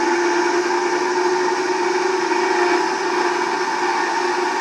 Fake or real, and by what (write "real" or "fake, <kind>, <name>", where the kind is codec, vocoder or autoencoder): real